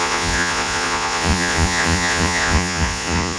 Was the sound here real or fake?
fake